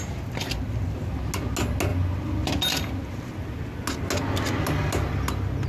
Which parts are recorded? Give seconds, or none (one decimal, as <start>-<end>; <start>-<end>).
0.0-5.7